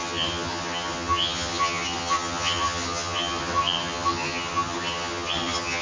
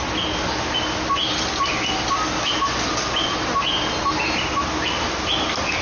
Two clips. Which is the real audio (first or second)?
second